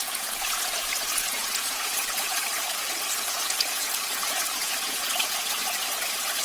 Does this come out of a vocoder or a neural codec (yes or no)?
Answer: yes